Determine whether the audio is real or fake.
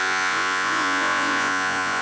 fake